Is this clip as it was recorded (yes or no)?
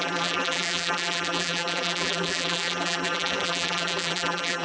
no